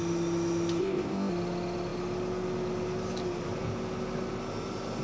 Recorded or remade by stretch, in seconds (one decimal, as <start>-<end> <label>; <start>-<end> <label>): 0.0-0.8 recorded; 0.8-1.3 remade; 1.3-5.0 recorded